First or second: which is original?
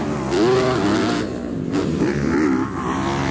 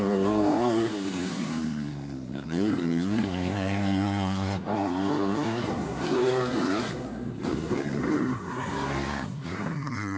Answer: first